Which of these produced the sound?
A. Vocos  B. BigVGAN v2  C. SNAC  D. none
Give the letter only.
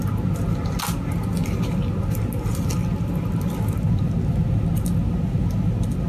D